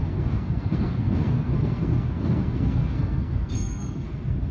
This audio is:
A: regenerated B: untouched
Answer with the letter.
A